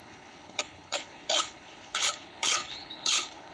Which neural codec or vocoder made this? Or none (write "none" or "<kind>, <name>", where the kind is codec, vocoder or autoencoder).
codec, HILCodec